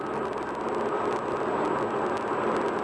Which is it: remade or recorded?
recorded